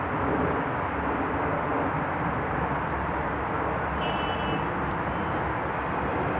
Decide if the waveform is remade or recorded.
recorded